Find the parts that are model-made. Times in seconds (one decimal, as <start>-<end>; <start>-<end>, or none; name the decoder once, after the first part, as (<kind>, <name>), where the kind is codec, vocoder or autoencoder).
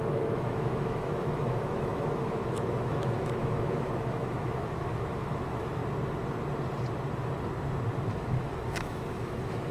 0.0-5.8 (autoencoder, DAC-VAE); 8.1-9.7